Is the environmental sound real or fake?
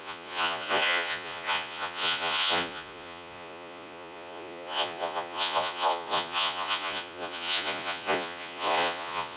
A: fake